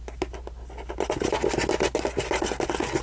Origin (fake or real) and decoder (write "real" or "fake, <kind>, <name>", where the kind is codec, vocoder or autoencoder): real